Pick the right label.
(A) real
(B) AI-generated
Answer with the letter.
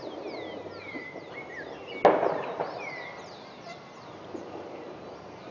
A